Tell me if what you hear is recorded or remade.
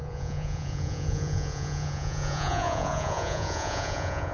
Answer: remade